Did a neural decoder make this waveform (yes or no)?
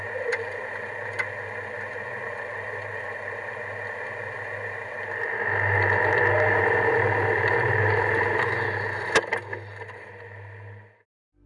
no